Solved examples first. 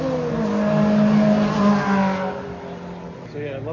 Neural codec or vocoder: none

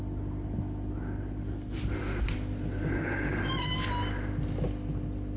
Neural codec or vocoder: none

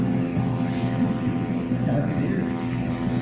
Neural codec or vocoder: none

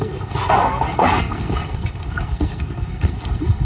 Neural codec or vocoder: codec, SNAC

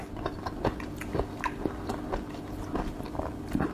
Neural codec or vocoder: none